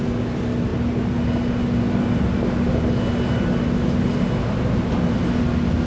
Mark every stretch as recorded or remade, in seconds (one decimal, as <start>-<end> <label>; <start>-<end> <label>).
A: 0.0-5.9 recorded